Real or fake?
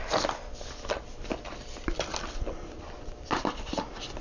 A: real